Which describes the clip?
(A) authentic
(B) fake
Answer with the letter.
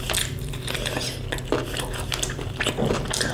A